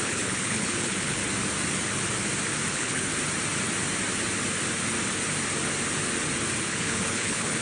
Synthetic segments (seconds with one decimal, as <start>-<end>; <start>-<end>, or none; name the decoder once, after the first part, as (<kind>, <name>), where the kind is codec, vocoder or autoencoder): 0.0-1.2 (codec, HILCodec); 2.7-3.1; 6.6-7.6